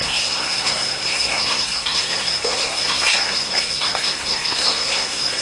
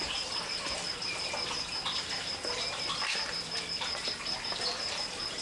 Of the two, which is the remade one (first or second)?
first